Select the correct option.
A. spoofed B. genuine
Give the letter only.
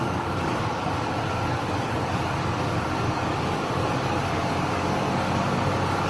A